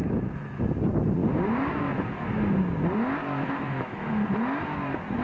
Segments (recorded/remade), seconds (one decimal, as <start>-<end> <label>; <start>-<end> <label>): 0.0-0.6 remade; 0.6-3.2 recorded; 3.2-4.1 remade; 4.1-5.2 recorded